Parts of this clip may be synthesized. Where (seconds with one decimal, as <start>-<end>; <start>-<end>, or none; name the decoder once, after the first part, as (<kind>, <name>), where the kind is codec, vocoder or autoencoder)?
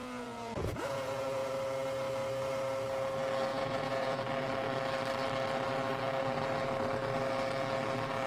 0.0-1.5 (vocoder, Vocos); 3.5-4.2